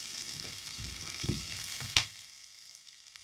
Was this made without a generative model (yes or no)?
no